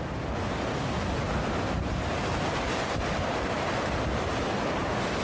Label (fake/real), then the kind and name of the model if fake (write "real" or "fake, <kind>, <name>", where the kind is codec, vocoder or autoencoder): real